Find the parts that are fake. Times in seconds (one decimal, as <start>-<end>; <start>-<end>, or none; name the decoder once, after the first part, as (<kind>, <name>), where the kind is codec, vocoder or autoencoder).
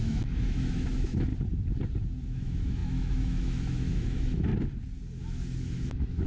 0.0-1.3 (autoencoder, DAC-VAE); 2.3-4.5; 5.2-6.3